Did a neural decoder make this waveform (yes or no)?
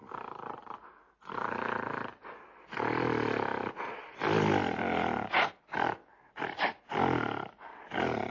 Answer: no